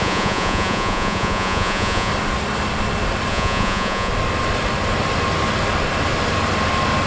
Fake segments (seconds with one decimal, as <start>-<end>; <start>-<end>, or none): 0.0-2.1; 3.3-4.1